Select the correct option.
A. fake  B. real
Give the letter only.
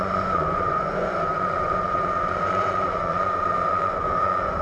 A